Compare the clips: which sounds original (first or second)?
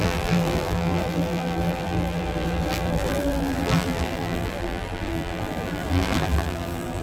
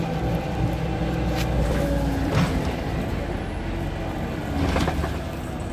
second